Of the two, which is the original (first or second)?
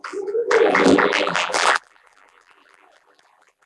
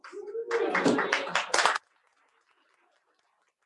second